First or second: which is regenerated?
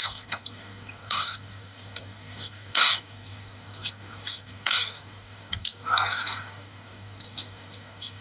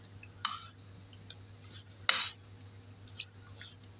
first